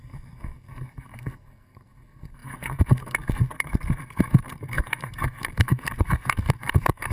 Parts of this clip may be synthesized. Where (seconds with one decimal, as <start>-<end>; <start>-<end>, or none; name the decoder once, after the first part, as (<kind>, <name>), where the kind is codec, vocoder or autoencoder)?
0.0-7.1 (codec, SNAC)